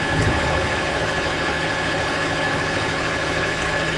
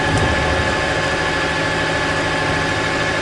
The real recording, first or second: second